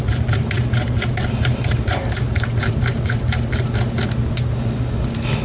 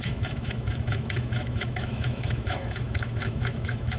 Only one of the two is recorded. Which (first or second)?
first